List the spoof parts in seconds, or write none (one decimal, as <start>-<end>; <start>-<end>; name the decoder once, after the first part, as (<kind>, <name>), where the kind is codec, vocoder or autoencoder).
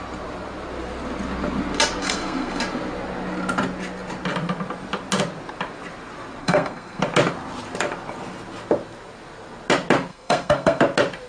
2.0-2.6 (codec, SNAC); 6.4-7.0; 10.1-10.8